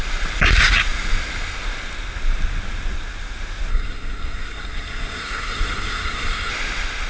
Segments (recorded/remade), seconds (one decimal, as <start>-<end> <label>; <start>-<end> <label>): 0.0-3.7 recorded; 3.7-6.5 remade; 6.5-7.1 recorded